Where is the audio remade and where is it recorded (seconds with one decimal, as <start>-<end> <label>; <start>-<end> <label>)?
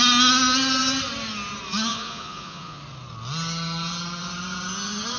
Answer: 0.0-1.9 recorded; 1.9-2.8 remade; 2.8-5.2 recorded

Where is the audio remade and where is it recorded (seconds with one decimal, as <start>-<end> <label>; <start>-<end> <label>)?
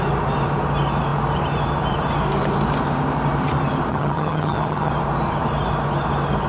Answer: 0.0-3.9 recorded; 3.9-4.9 remade; 4.9-6.5 recorded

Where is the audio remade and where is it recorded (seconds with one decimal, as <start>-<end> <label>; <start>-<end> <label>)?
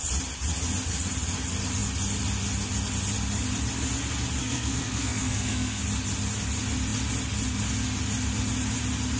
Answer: 0.0-4.4 recorded; 4.4-5.8 remade; 5.8-9.2 recorded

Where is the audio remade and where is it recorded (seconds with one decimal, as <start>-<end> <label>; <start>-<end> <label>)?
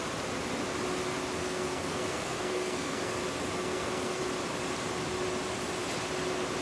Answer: 0.0-1.4 recorded; 1.4-3.2 remade; 3.2-3.6 recorded; 3.6-4.2 remade; 4.2-6.6 recorded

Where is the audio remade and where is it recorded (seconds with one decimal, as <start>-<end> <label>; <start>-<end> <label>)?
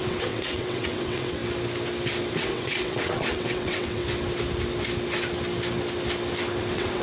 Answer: 0.0-1.4 remade; 1.4-2.3 recorded; 2.3-4.0 remade; 4.0-6.6 recorded; 6.6-7.0 remade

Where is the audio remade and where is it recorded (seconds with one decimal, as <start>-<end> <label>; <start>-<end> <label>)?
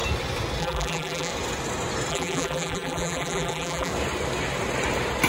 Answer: 0.0-0.6 recorded; 0.6-1.3 remade; 1.3-2.1 recorded; 2.1-3.9 remade; 3.9-5.3 recorded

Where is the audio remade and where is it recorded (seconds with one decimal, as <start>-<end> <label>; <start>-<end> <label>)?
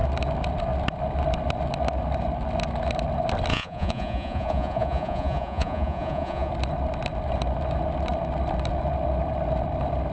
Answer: 0.0-3.5 recorded; 3.5-6.5 remade; 6.5-10.1 recorded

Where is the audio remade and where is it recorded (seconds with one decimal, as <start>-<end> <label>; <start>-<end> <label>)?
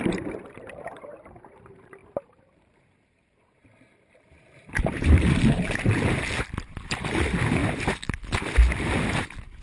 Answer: 0.0-7.6 remade; 7.6-8.4 recorded; 8.4-9.6 remade